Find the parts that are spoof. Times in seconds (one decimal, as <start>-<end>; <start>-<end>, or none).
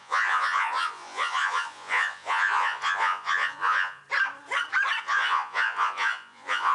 0.0-4.0; 5.0-6.7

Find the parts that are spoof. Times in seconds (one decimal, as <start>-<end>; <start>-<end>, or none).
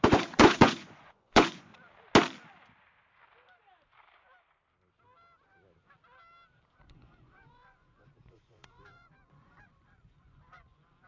0.0-1.7; 6.7-11.1